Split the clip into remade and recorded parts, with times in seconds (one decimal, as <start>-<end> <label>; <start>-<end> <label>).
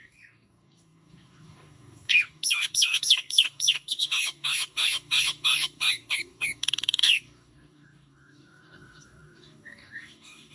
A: 0.0-10.5 remade